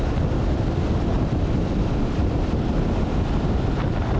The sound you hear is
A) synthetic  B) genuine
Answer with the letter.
A